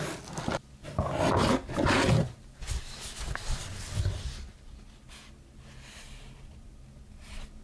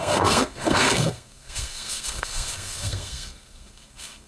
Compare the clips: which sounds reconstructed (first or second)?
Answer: second